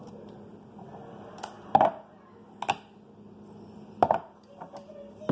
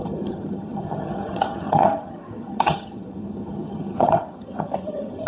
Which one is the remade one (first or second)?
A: second